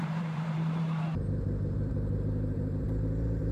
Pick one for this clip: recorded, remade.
remade